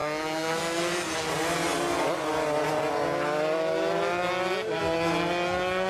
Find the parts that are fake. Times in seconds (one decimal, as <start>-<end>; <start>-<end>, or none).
0.0-0.6